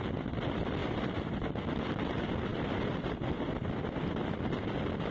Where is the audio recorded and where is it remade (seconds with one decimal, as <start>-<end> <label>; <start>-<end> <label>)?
0.0-5.1 recorded